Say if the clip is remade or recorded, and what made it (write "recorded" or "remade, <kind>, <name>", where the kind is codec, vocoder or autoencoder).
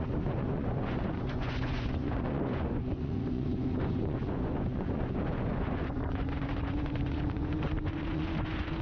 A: remade, vocoder, Vocos